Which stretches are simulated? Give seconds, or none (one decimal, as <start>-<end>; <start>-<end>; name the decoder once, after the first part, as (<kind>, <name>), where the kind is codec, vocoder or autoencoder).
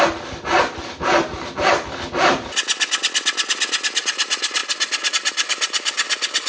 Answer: 0.0-2.7 (vocoder, BigVGAN v2); 4.0-4.6; 5.1-6.5